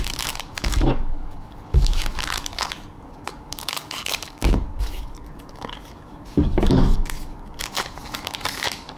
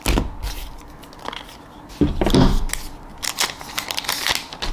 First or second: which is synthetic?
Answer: first